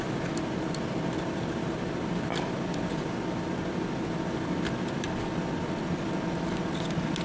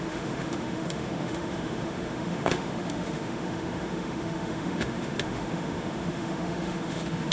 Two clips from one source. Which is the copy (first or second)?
second